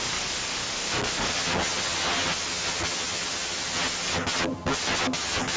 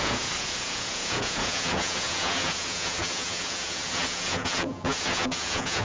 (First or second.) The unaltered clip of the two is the first